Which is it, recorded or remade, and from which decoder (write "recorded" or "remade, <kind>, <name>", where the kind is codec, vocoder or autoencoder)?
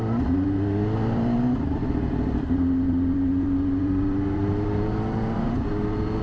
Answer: remade, vocoder, BigVGAN v2